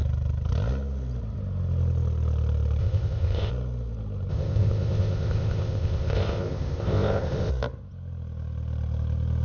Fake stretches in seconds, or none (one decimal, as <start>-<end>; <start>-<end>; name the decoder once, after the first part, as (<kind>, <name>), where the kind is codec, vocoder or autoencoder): 2.8-3.5 (codec, ZipCodec); 4.3-7.5